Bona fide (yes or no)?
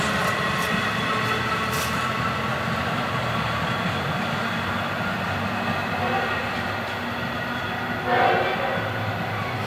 yes